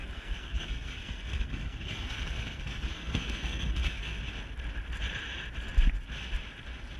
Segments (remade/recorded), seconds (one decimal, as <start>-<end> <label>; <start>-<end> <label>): 0.0-4.2 remade; 4.2-7.0 recorded